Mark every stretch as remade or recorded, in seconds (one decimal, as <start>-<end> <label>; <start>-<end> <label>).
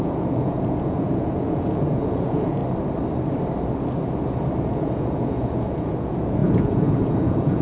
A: 0.0-2.6 remade; 2.6-4.6 recorded; 4.6-7.6 remade